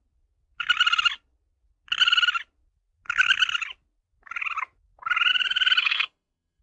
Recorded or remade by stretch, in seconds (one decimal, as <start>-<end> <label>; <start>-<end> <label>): 0.0-5.8 recorded; 5.8-6.6 remade